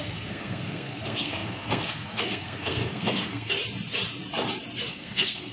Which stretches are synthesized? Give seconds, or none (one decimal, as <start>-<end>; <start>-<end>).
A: 0.0-3.6; 4.9-5.5